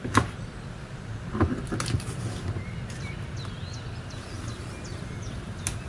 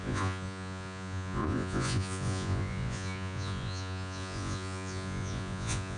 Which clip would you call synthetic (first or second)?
second